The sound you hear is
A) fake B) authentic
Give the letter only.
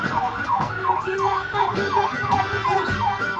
A